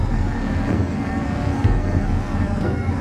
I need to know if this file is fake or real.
fake